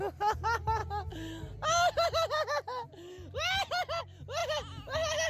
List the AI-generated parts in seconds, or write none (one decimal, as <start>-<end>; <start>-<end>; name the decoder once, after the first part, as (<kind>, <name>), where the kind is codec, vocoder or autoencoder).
none

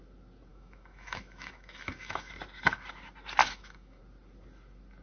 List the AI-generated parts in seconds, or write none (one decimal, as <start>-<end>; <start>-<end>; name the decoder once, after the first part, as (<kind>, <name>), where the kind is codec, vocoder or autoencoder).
0.5-2.3 (autoencoder, DAC-VAE); 3.4-4.0

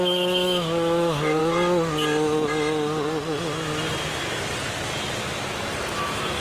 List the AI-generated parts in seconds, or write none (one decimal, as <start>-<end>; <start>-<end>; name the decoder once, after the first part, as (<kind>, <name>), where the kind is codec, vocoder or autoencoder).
0.0-1.4 (autoencoder, DAC-VAE); 5.2-6.4

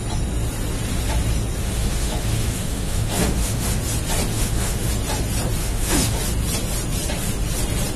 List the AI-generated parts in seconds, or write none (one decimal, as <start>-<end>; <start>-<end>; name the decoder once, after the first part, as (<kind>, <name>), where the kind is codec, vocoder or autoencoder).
1.6-3.8 (autoencoder, DAC-VAE); 4.3-4.9; 5.6-6.2

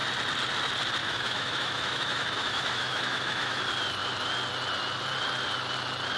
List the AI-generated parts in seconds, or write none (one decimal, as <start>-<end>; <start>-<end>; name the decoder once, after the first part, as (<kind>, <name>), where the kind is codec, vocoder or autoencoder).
1.0-3.6 (autoencoder, DAC-VAE)

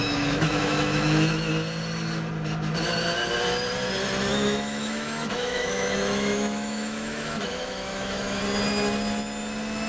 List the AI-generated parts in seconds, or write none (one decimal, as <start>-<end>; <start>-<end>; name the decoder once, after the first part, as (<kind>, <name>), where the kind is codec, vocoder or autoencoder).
0.0-1.5 (autoencoder, DAC-VAE); 4.3-8.4

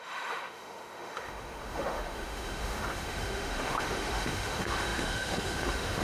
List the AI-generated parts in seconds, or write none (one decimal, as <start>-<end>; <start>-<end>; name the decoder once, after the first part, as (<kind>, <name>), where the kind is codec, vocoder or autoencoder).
0.0-6.0 (autoencoder, DAC-VAE)